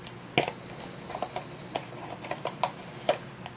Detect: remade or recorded recorded